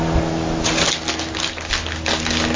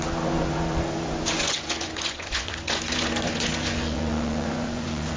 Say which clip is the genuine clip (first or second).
first